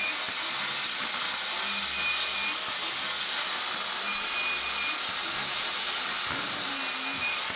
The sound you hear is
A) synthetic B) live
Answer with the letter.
B